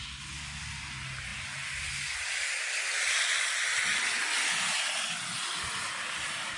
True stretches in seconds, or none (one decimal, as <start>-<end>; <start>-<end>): 0.0-6.6